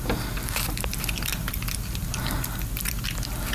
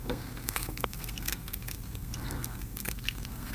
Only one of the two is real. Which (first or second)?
first